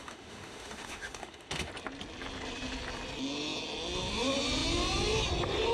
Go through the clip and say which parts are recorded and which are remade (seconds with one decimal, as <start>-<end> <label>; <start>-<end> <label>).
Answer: 0.0-1.7 remade; 1.7-5.7 recorded